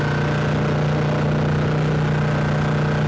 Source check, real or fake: real